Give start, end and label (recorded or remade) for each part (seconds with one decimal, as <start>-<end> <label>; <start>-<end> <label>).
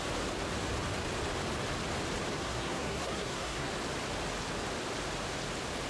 0.0-2.3 recorded; 2.3-3.7 remade; 3.7-5.9 recorded